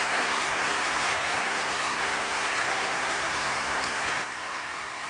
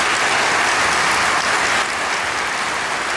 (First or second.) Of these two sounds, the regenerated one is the first